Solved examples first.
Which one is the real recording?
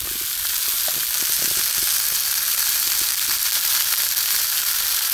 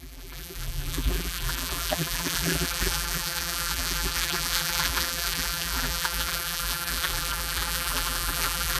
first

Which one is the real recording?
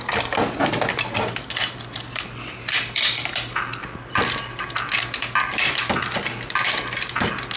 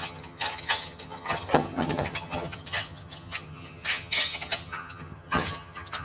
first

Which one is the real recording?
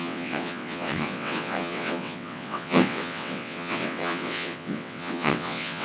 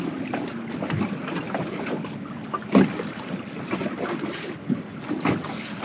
second